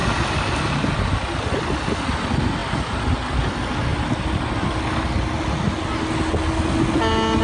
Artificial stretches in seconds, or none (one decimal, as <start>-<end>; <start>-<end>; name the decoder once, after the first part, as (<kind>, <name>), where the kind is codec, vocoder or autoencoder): none